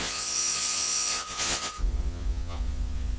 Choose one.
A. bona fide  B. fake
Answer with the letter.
B